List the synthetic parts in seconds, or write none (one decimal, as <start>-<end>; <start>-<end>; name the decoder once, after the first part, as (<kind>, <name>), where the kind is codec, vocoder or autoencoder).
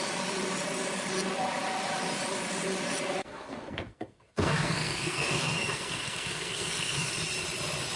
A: 3.2-7.1 (codec, SNAC)